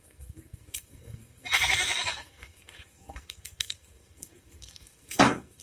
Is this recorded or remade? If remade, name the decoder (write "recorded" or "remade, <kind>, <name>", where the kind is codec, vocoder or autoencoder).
remade, codec, SNAC